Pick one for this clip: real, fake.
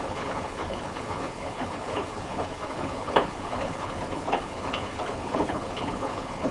fake